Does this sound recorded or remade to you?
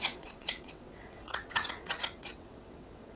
remade